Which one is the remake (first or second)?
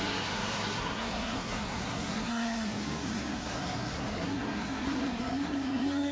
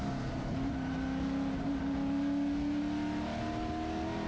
first